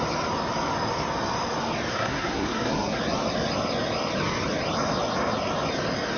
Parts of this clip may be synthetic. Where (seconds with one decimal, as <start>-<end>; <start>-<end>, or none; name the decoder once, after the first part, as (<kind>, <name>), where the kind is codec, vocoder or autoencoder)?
1.9-3.0 (codec, SNAC)